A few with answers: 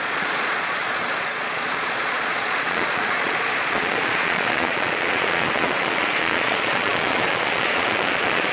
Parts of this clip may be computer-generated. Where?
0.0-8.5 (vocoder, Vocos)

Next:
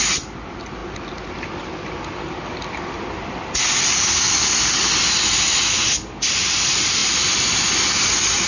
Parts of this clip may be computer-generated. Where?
none

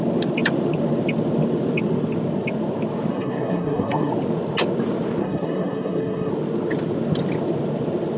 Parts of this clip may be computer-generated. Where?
3.1-4.1 (codec, SNAC); 5.2-6.3

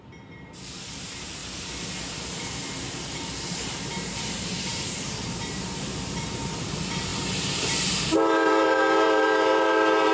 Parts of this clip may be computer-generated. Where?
0.0-1.4 (vocoder, BigVGAN v2); 2.2-10.1

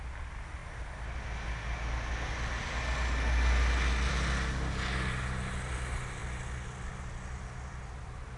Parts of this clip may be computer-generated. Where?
none

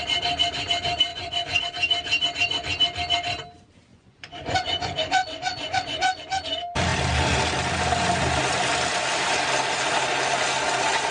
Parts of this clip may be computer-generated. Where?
1.1-1.6 (vocoder, Vocos); 3.9-6.2

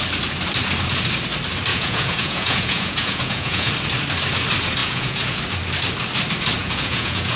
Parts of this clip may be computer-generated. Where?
1.7-3.7 (vocoder, Vocos); 4.8-5.4; 6.6-7.4

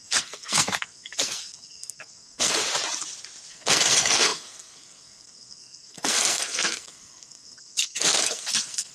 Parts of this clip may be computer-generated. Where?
0.0-2.6 (codec, SNAC); 3.5-8.9